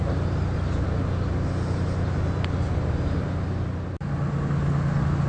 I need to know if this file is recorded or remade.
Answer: recorded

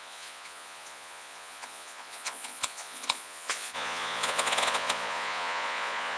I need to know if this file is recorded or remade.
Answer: remade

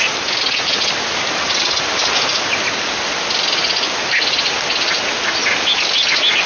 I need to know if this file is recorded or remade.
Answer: recorded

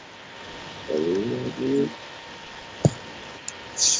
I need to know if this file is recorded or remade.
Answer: recorded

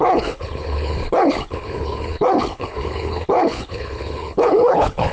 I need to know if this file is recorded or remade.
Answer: remade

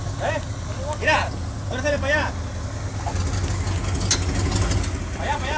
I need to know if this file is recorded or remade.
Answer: recorded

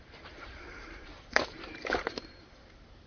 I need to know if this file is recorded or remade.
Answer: remade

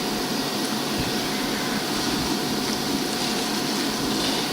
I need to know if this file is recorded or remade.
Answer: recorded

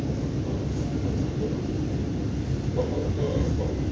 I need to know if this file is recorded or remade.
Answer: recorded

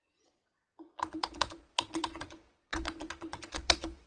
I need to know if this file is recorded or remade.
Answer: remade